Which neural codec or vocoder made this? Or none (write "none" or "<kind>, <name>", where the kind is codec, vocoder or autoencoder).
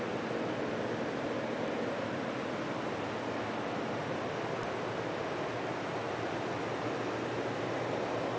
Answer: none